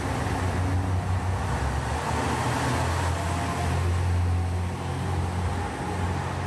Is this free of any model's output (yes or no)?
yes